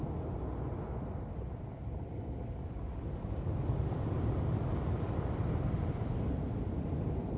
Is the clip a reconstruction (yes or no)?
no